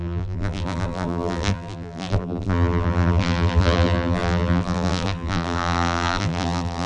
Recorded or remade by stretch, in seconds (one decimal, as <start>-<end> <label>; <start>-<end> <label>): 0.0-6.9 remade